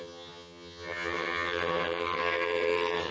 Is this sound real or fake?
fake